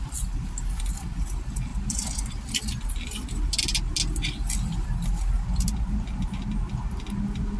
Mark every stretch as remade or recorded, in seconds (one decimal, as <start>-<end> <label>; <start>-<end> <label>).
0.0-7.6 recorded